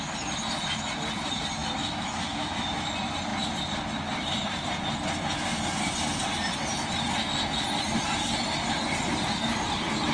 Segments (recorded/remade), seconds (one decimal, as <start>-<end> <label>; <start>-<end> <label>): 0.0-1.6 recorded; 1.6-2.9 remade; 2.9-10.1 recorded